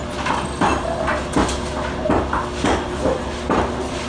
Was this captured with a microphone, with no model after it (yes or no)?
yes